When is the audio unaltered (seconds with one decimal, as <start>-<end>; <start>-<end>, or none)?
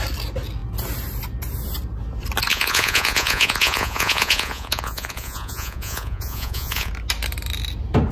0.0-2.5; 6.9-8.1